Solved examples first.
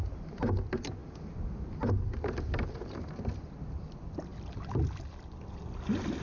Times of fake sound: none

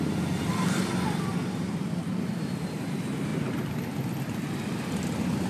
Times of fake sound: 1.3-2.8 (vocoder, BigVGAN v2)

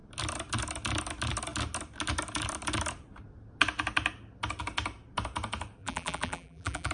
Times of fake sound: 5.8-6.9 (vocoder, BigVGAN v2)

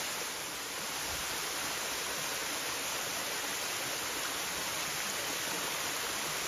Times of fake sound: none

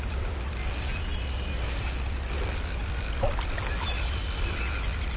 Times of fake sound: none